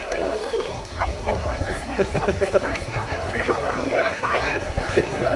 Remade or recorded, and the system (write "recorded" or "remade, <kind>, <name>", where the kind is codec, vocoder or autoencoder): remade, codec, SNAC